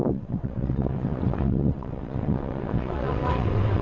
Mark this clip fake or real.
fake